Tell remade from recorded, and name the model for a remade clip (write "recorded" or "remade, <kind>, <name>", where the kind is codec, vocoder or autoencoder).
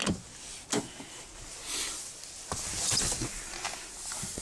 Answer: recorded